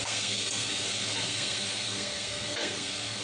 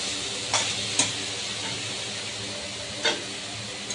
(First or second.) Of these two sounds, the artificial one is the first